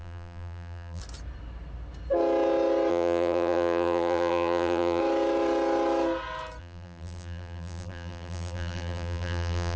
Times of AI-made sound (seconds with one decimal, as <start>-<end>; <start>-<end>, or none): 0.0-1.0; 2.9-5.0; 6.6-9.8